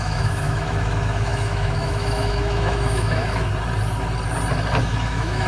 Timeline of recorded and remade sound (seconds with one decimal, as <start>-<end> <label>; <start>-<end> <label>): 0.0-3.5 remade; 3.5-4.8 recorded; 4.8-5.5 remade